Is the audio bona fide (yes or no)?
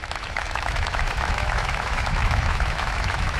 no